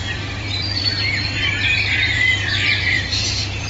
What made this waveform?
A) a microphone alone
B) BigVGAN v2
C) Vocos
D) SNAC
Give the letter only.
B